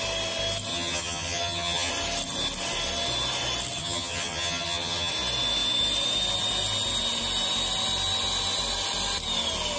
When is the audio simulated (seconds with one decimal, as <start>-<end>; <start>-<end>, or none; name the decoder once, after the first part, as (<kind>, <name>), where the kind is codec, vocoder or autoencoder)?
0.7-1.9 (vocoder, HiFi-GAN); 3.8-5.1